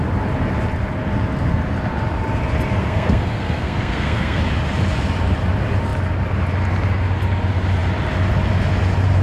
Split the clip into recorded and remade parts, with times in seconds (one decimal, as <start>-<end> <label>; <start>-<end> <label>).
0.0-2.8 recorded; 2.8-4.4 remade; 4.4-9.2 recorded